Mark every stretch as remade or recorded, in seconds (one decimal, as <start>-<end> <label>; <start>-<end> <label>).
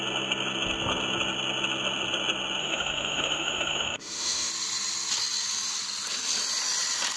0.0-2.6 recorded; 2.6-4.5 remade; 4.5-7.2 recorded